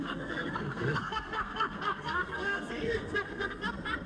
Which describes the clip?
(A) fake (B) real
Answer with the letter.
A